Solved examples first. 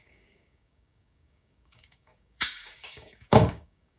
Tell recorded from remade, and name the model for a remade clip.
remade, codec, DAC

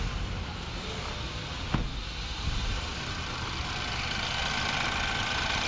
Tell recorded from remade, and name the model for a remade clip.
recorded